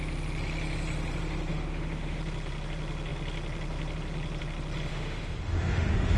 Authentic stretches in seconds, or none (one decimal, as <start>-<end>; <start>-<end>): 0.0-1.5; 2.2-4.9